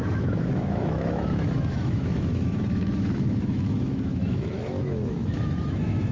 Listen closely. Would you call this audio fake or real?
fake